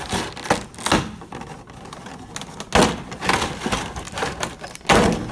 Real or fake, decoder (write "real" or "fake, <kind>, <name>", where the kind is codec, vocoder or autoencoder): real